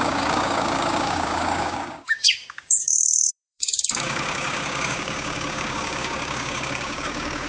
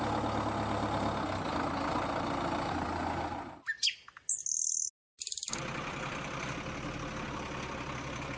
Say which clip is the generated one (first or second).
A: first